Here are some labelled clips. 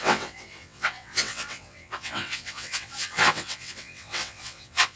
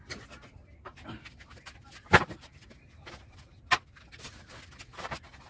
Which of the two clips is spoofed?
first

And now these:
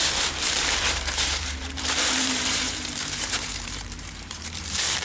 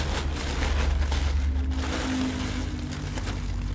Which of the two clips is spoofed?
first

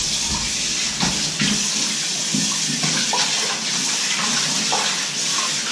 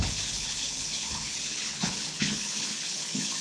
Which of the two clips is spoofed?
second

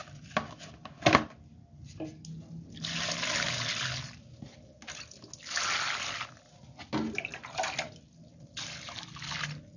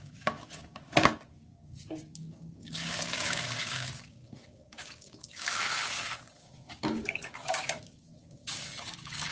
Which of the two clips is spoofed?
second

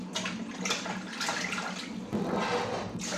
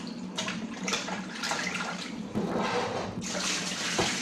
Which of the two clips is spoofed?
second